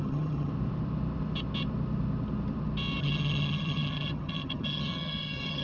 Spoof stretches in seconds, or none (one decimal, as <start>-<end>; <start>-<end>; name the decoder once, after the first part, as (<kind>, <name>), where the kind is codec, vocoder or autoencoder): 0.0-0.5 (vocoder, HiFi-GAN); 3.0-5.6